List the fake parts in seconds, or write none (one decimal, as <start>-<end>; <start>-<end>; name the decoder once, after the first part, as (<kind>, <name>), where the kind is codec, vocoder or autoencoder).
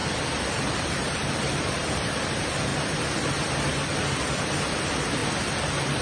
0.8-2.7 (vocoder, BigVGAN v2); 4.8-6.0